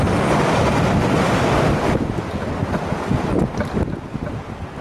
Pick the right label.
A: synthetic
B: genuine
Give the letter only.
B